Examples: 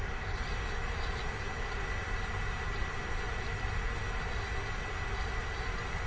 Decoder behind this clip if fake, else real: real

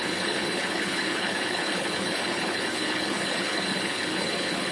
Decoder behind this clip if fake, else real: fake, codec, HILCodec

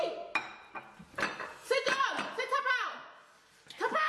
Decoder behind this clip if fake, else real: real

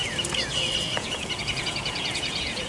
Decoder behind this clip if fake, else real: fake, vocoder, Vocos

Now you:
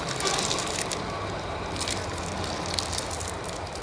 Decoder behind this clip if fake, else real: real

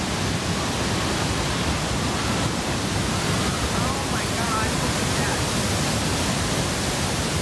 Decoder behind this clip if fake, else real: fake, vocoder, BigVGAN v2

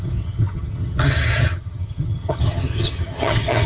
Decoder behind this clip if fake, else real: fake, vocoder, HiFi-GAN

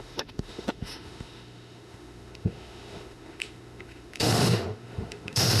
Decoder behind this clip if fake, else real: fake, autoencoder, DAC-VAE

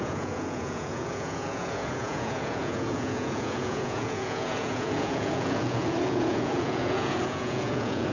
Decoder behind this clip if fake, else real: fake, vocoder, Vocos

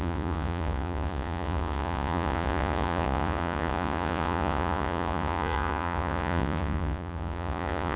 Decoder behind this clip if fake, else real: fake, vocoder, Vocos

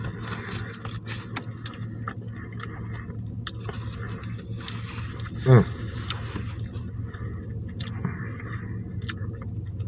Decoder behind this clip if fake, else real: real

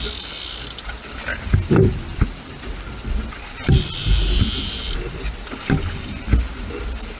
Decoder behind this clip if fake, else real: real